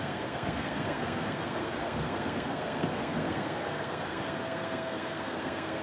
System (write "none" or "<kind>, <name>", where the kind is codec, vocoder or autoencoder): codec, SNAC